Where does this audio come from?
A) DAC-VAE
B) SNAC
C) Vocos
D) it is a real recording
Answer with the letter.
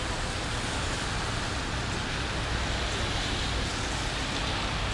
D